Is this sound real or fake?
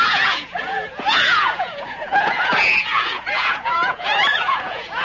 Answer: fake